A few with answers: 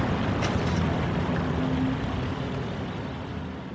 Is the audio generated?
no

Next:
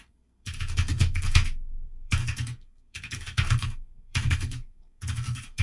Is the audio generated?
yes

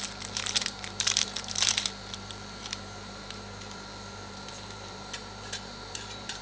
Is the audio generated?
yes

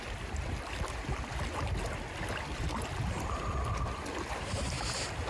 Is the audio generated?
no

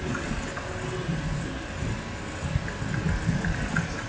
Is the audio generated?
no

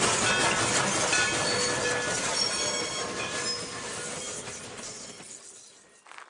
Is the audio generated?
no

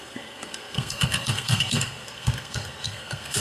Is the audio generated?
yes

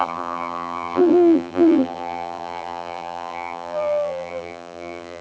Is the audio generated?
yes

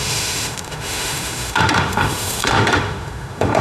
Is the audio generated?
yes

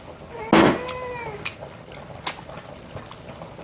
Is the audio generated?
no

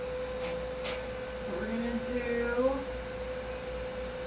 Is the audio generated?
no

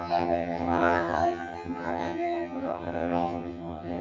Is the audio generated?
yes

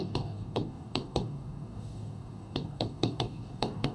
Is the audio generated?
yes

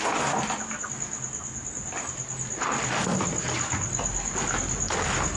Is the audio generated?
no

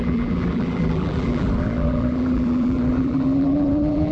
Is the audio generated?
yes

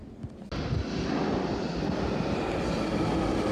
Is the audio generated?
no